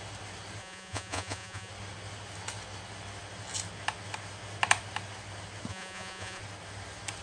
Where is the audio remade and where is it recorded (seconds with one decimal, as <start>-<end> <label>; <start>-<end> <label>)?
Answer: 0.0-0.6 recorded; 0.6-1.7 remade; 1.7-5.7 recorded; 5.7-6.4 remade; 6.4-7.2 recorded